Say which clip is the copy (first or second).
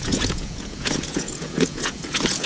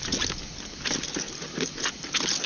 first